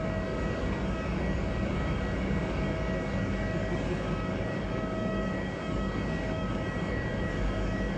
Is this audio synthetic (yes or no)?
yes